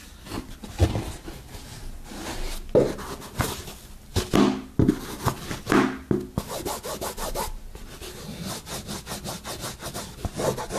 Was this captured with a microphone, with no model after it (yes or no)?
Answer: yes